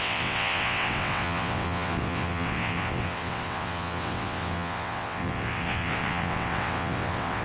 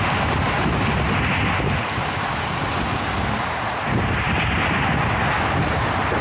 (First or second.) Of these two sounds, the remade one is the first